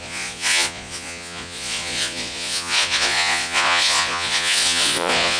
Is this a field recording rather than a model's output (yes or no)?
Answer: no